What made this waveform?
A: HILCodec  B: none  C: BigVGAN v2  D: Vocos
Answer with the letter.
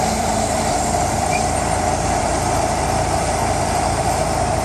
C